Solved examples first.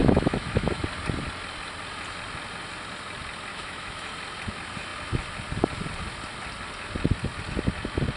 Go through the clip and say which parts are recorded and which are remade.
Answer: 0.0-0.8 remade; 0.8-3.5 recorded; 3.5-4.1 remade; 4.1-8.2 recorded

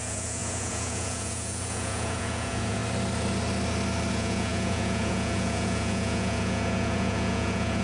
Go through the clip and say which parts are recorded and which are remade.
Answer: 0.0-2.8 remade; 2.8-4.1 recorded; 4.1-7.8 remade

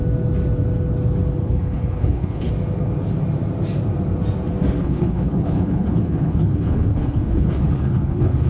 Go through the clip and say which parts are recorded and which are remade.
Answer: 0.0-1.4 recorded; 1.4-2.5 remade; 2.5-4.8 recorded; 4.8-8.5 remade

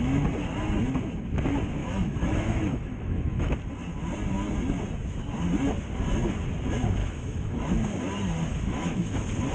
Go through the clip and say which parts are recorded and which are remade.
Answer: 0.0-1.8 recorded; 1.8-3.5 remade; 3.5-7.0 recorded; 7.0-7.7 remade; 7.7-8.5 recorded; 8.5-9.1 remade; 9.1-9.5 recorded